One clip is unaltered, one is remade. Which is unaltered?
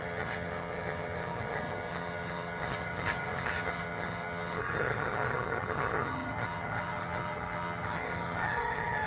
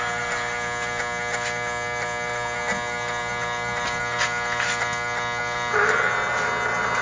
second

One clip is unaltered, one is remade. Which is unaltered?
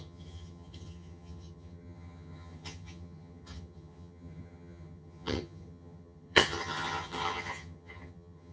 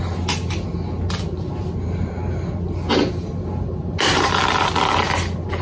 second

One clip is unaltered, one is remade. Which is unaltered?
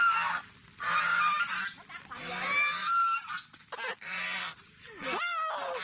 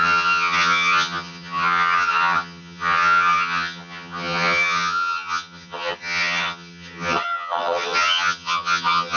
first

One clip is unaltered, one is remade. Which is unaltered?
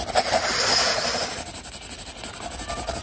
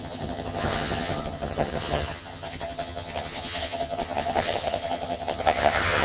first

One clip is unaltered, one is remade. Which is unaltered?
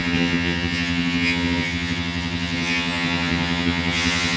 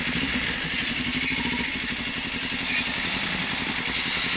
second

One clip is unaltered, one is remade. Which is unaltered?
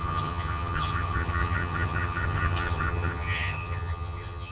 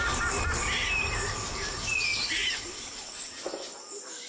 second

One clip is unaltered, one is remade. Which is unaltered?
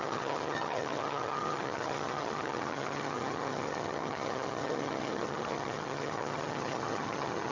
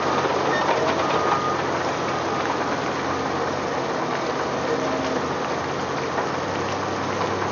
second